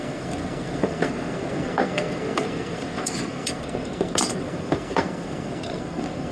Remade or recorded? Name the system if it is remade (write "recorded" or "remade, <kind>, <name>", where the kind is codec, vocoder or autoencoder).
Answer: remade, codec, SNAC